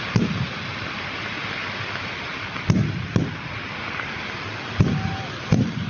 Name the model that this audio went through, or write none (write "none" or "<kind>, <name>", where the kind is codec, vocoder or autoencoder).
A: none